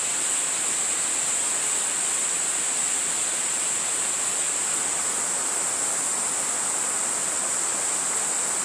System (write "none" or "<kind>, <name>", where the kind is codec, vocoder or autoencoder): none